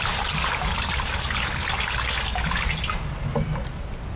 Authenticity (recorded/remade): recorded